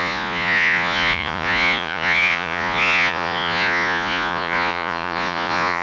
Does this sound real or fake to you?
fake